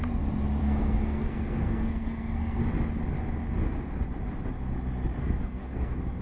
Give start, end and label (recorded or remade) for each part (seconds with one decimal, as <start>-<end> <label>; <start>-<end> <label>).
0.0-0.6 recorded; 0.6-2.6 remade; 2.6-5.2 recorded; 5.2-6.2 remade